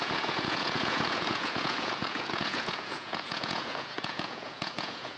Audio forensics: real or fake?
fake